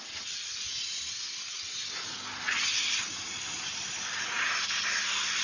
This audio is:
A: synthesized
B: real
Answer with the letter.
B